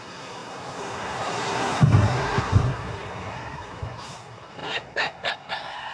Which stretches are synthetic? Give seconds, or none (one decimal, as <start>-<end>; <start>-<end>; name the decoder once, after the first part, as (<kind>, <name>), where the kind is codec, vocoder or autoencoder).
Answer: 0.0-5.9 (codec, SNAC)